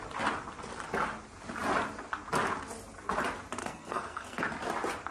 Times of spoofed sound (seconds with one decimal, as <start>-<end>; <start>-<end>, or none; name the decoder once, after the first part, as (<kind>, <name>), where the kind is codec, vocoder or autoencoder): 3.6-4.4 (codec, SNAC)